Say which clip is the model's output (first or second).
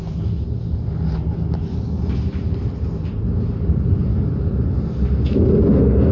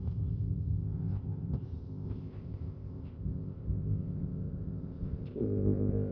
second